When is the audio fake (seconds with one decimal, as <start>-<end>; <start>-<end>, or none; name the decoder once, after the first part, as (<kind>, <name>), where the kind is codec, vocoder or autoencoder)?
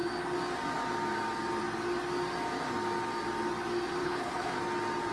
4.0-4.6 (codec, HILCodec)